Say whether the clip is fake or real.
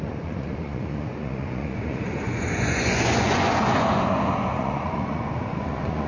fake